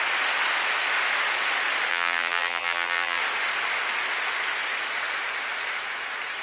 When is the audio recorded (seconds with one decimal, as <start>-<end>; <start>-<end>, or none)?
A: 0.0-1.9; 3.2-6.4